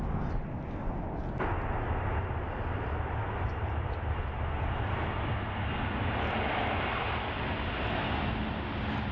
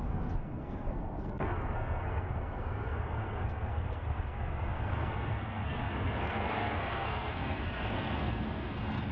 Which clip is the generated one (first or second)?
second